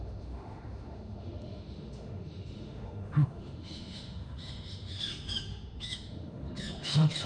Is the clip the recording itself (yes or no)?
no